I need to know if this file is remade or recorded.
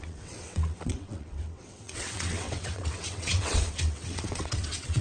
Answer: remade